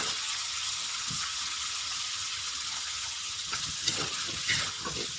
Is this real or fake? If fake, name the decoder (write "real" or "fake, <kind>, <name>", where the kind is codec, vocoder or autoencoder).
fake, vocoder, HiFi-GAN